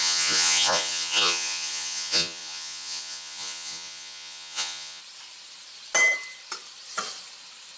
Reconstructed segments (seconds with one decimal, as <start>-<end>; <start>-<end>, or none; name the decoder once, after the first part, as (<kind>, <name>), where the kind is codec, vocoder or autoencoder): 0.0-5.0 (vocoder, Vocos)